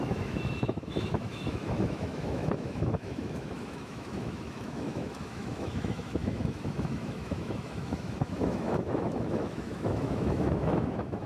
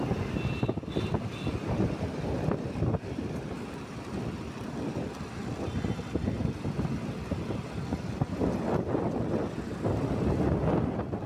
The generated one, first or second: first